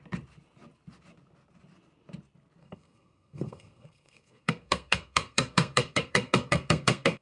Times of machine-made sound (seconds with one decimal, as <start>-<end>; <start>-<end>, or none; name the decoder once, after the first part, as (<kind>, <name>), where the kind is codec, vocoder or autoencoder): 2.6-7.2 (codec, SNAC)